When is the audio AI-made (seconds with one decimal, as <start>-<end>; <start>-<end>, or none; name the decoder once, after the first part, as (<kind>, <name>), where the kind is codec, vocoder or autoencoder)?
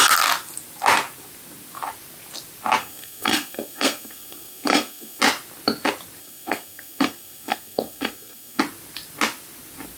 2.8-5.2 (codec, SNAC); 6.2-8.6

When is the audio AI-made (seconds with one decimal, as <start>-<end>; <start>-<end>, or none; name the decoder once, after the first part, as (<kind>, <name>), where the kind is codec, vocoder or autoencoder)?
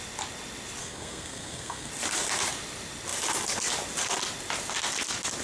0.8-1.9 (codec, SNAC)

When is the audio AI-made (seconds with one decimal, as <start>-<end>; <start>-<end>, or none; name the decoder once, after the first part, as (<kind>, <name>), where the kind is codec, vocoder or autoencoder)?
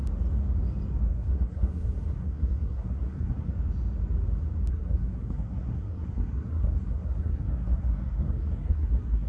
1.1-3.5 (codec, SNAC); 4.7-9.3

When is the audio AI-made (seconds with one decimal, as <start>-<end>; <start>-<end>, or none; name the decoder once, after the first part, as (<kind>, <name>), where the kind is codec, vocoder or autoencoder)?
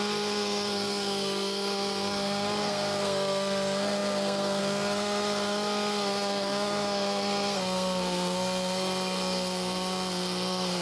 0.0-10.8 (codec, SNAC)